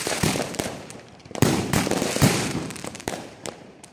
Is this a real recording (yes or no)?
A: no